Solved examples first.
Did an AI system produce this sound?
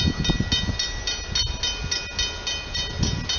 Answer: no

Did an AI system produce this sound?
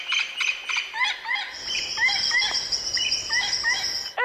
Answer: no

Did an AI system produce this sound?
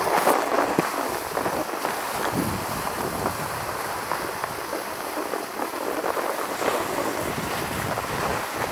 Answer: no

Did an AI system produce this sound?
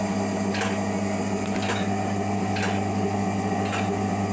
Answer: no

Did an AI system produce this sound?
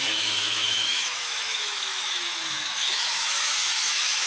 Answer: yes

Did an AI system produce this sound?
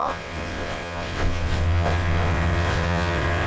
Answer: yes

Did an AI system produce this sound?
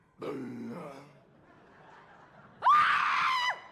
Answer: no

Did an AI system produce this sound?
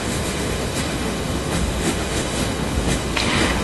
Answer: yes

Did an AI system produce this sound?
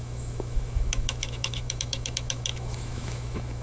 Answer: yes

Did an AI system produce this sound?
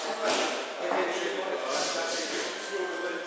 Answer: no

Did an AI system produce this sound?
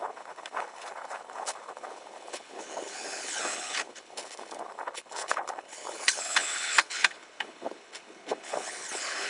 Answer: yes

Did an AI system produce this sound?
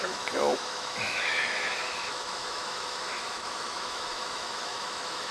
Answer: yes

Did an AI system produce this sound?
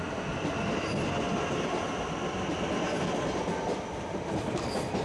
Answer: no